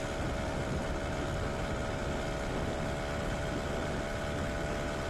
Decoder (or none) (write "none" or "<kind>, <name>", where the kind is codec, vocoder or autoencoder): none